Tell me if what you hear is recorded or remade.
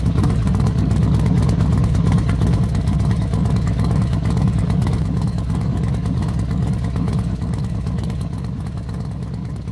remade